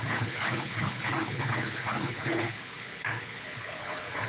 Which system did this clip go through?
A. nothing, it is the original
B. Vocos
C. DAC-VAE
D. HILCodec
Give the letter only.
D